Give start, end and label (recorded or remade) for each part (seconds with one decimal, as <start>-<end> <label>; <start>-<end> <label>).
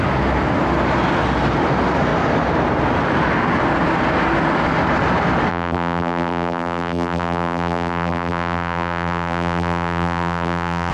0.0-5.5 recorded; 5.5-10.9 remade